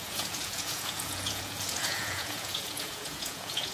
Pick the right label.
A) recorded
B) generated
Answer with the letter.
B